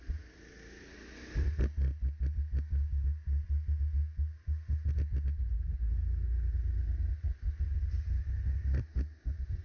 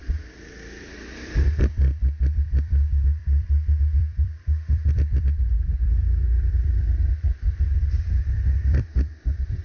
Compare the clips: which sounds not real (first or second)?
second